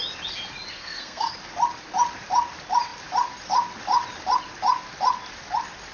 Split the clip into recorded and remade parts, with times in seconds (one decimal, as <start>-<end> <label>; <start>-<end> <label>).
0.0-0.7 recorded; 0.7-1.3 remade; 1.3-5.9 recorded

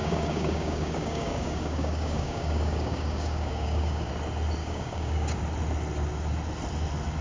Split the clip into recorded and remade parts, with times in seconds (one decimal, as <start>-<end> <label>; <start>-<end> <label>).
0.0-4.1 remade; 4.1-4.6 recorded; 4.6-5.4 remade; 5.4-7.2 recorded